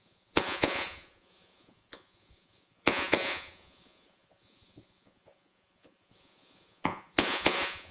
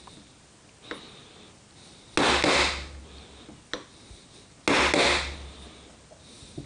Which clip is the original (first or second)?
second